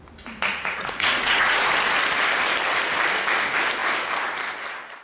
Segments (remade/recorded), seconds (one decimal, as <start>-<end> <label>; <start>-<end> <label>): 0.0-0.5 recorded; 0.5-1.7 remade; 1.7-5.0 recorded